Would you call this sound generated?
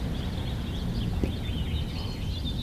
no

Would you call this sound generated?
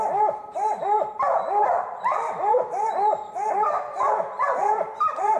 yes